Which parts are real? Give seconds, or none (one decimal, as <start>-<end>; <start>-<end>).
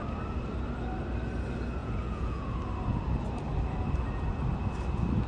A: 0.0-1.8; 2.5-5.3